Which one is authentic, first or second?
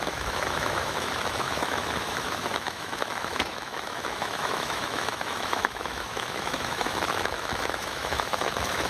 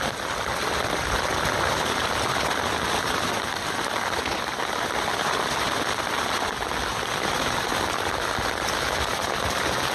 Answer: second